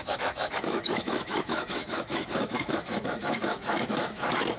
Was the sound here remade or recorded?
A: remade